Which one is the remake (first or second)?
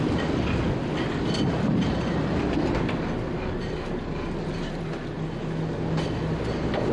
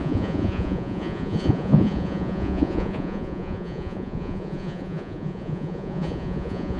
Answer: second